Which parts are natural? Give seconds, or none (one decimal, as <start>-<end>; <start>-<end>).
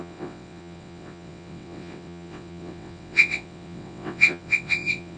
none